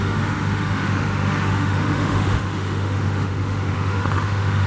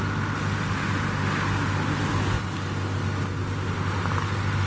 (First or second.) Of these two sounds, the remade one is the first